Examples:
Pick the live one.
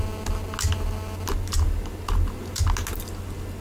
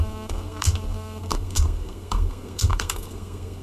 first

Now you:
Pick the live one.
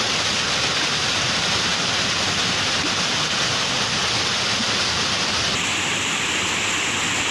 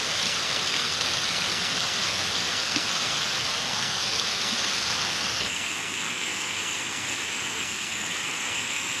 first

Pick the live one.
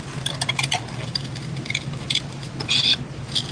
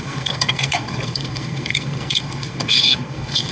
first